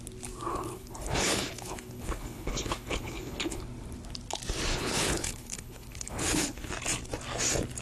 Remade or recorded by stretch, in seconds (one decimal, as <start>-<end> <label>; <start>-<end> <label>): 0.0-0.5 recorded; 0.5-3.6 remade; 3.6-4.7 recorded; 4.7-6.7 remade; 6.7-7.8 recorded